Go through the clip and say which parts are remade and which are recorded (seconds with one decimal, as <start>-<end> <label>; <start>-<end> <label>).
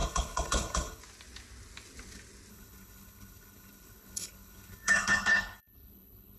0.0-1.0 remade; 1.0-2.5 recorded; 2.5-6.4 remade